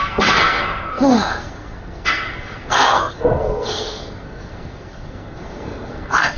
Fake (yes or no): yes